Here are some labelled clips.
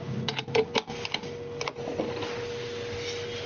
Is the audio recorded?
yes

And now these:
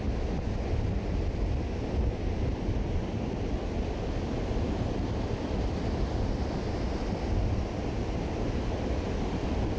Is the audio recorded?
yes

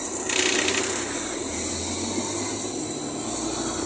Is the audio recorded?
yes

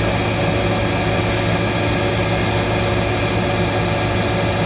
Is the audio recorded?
yes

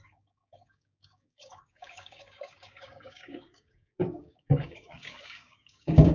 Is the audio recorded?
no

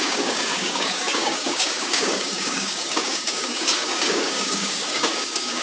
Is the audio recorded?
no